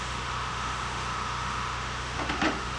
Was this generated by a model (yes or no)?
yes